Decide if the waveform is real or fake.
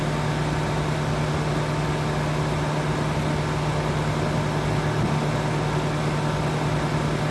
real